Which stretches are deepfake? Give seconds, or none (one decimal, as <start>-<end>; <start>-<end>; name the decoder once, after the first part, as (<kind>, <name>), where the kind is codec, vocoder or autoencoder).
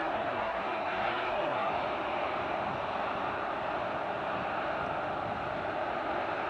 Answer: 0.0-1.7 (codec, SNAC)